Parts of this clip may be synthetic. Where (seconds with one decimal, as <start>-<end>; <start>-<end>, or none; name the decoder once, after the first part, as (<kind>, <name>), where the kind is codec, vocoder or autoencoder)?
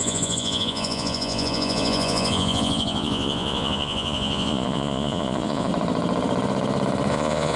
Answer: 0.0-5.7 (vocoder, Vocos); 7.1-7.6